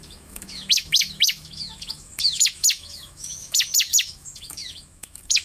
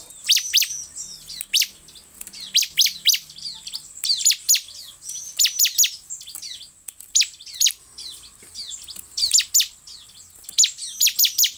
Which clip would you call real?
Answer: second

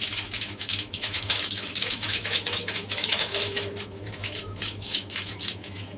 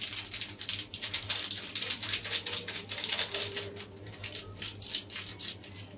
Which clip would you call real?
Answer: second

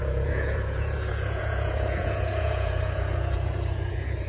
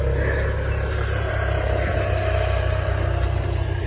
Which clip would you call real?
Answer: second